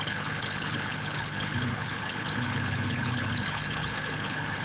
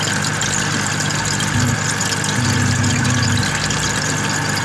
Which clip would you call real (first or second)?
second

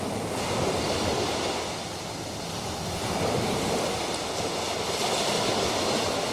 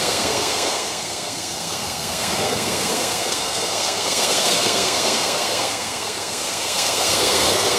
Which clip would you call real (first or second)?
first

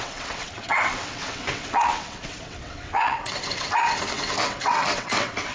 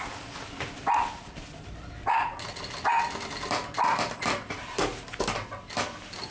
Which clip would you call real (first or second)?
second